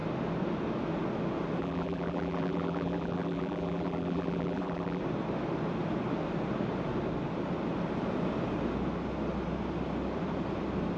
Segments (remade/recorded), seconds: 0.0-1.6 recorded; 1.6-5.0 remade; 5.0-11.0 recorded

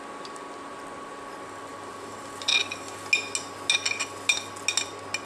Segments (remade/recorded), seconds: 0.0-1.7 recorded; 1.7-2.3 remade; 2.3-5.3 recorded

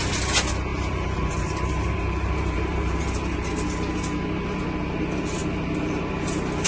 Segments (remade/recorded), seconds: 0.0-0.7 recorded; 0.7-3.5 remade; 3.5-6.7 recorded

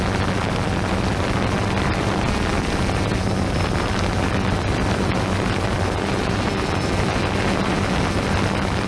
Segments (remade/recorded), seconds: 0.0-8.9 recorded